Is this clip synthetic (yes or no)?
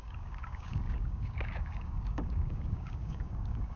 yes